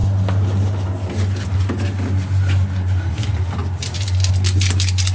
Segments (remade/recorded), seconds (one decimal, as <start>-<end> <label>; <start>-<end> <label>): 0.0-3.6 recorded; 3.6-4.3 remade; 4.3-5.1 recorded

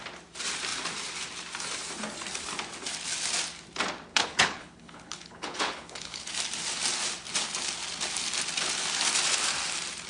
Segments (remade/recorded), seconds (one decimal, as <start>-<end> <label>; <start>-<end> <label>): 0.0-4.1 recorded; 4.1-6.3 remade; 6.3-10.1 recorded

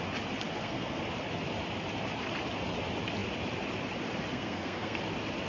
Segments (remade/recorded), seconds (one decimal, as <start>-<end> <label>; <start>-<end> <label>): 0.0-0.5 recorded; 0.5-1.0 remade; 1.0-4.3 recorded; 4.3-5.0 remade; 5.0-5.5 recorded

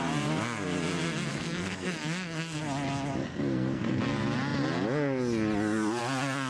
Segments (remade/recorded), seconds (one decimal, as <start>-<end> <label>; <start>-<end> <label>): 0.0-1.3 recorded; 1.3-2.6 remade; 2.6-3.2 recorded; 3.2-4.0 remade; 4.0-6.5 recorded

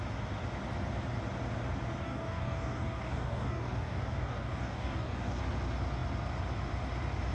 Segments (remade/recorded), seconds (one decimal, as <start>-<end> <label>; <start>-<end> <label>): 0.0-2.0 recorded; 2.0-5.4 remade; 5.4-7.3 recorded

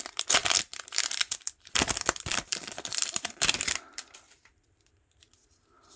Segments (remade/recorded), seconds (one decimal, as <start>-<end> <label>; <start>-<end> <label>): 0.0-6.0 remade

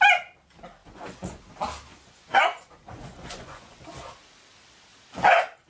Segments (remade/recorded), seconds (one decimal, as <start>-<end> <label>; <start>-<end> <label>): 0.0-0.8 recorded; 0.8-1.4 remade; 1.4-1.9 recorded; 1.9-3.8 remade; 3.8-5.7 recorded